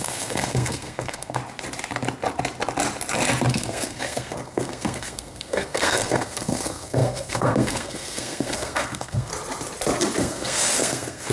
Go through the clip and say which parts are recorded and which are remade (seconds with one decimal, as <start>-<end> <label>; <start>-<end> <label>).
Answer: 0.0-1.4 remade; 1.4-3.5 recorded; 3.5-9.3 remade; 9.3-10.2 recorded; 10.2-11.3 remade